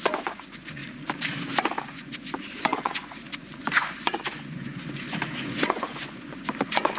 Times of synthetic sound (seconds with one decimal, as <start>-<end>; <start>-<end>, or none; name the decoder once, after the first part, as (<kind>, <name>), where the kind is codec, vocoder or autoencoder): 0.0-0.8 (vocoder, Vocos); 1.8-7.0